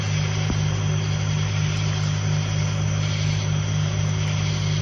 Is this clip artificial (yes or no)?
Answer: no